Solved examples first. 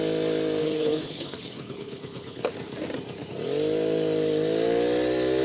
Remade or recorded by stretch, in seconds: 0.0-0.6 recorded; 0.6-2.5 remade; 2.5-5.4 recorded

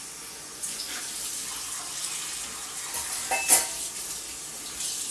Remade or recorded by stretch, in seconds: 0.0-1.0 remade; 1.0-5.1 recorded

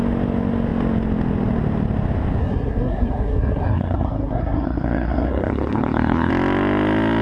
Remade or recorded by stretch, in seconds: 0.0-2.4 recorded; 2.4-6.3 remade; 6.3-7.2 recorded

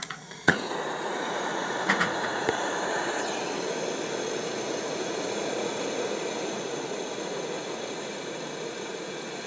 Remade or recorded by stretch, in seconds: 0.0-3.4 remade; 3.4-4.0 recorded; 4.0-9.5 remade